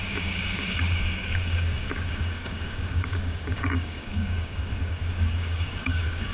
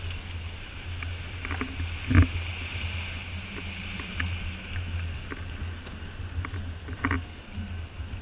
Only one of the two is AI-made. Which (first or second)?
first